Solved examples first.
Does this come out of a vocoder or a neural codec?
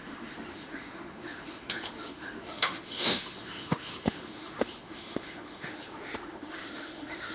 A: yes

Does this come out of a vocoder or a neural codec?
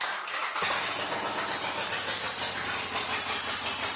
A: no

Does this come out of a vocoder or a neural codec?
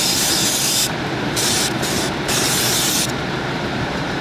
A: yes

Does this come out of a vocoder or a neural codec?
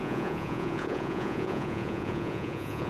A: yes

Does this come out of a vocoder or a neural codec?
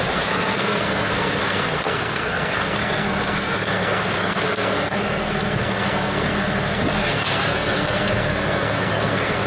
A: yes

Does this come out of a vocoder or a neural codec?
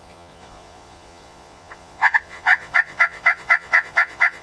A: yes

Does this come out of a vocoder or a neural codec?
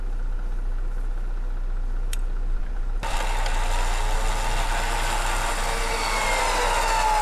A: no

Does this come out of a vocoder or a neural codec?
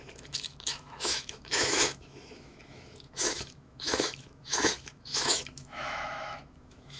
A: yes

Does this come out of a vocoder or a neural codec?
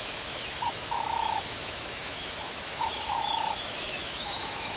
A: yes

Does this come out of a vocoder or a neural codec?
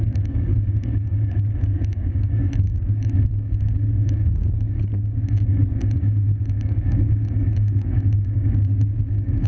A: yes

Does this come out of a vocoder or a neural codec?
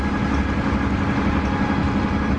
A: no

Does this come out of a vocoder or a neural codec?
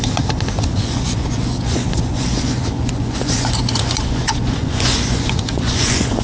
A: yes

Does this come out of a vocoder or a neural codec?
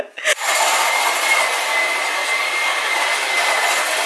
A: no